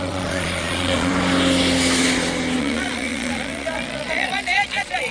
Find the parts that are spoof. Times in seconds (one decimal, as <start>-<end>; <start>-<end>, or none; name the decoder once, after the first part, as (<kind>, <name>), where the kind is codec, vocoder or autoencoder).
0.0-1.1 (vocoder, Vocos); 2.6-5.1